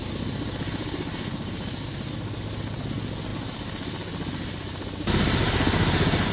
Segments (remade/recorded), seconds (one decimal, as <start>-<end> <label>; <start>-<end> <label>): 0.0-6.3 recorded